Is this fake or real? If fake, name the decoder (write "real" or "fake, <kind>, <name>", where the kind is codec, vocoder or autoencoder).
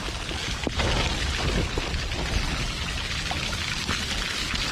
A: real